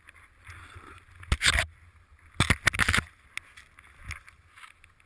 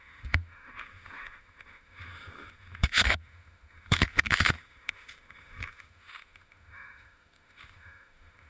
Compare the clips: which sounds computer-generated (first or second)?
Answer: second